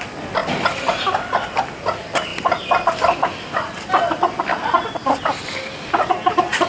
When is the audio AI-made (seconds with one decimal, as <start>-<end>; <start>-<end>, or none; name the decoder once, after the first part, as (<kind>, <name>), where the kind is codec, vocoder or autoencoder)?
none